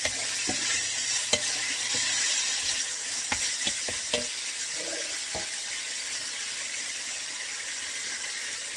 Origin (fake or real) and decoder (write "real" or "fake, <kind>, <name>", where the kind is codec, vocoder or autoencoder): real